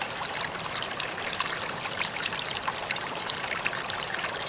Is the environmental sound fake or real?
fake